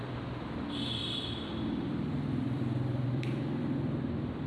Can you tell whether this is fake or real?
fake